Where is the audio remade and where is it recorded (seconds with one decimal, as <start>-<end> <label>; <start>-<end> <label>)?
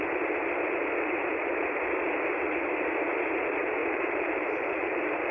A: 0.0-0.8 recorded; 0.8-1.5 remade; 1.5-3.8 recorded; 3.8-5.3 remade